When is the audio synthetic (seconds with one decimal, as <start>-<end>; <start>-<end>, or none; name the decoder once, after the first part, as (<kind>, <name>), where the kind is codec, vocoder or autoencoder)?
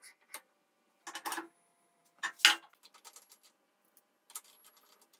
none